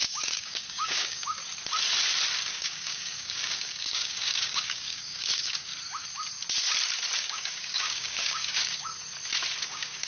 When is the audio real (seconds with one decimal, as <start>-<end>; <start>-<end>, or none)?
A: 1.4-2.5; 5.7-7.2; 8.9-9.6